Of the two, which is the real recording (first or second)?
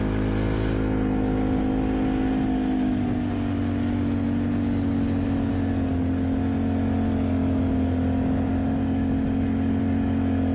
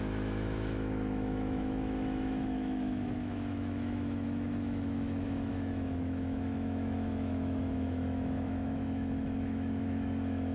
first